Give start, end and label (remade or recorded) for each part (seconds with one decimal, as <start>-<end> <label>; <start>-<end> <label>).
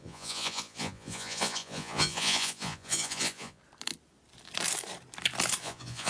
0.0-3.6 remade; 3.6-5.6 recorded; 5.6-6.1 remade